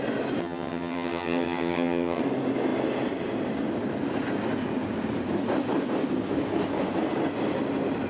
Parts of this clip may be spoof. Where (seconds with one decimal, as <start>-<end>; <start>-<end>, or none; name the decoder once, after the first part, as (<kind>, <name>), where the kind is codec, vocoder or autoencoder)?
0.4-2.2 (vocoder, HiFi-GAN)